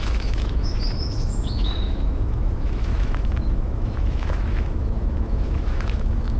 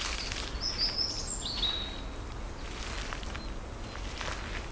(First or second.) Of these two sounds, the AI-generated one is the first